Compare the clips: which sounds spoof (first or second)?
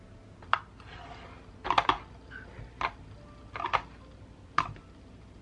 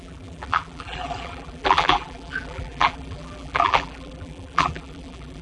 second